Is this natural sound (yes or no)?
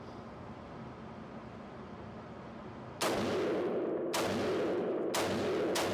yes